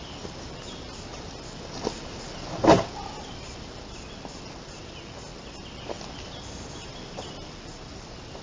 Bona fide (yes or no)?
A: yes